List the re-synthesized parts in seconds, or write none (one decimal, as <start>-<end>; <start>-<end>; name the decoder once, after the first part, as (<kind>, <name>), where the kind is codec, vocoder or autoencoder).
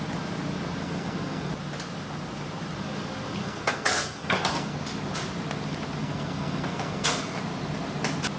0.8-1.5 (codec, SNAC); 3.4-4.8; 6.0-7.4